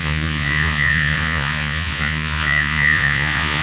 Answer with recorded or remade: remade